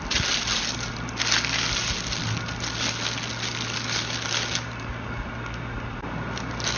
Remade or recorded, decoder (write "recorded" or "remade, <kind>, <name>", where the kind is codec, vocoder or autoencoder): recorded